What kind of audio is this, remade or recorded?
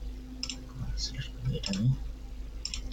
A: recorded